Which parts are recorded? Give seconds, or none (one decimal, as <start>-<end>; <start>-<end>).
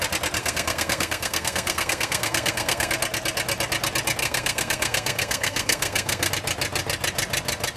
0.0-0.4; 2.9-4.2; 6.3-7.8